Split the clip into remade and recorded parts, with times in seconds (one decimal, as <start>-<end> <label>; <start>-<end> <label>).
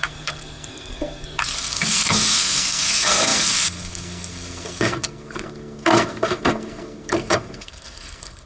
0.0-8.5 remade